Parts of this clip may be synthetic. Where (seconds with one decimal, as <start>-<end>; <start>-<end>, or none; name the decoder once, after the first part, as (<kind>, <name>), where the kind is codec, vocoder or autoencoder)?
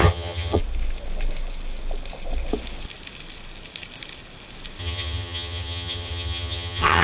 0.0-0.6 (vocoder, HiFi-GAN); 4.8-7.0